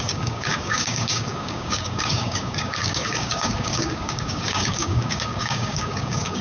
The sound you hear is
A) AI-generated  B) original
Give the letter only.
A